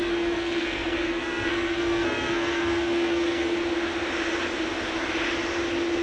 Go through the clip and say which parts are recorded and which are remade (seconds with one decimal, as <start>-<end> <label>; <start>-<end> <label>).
0.0-3.6 remade; 3.6-6.0 recorded